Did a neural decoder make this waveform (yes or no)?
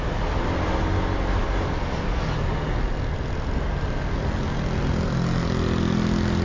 no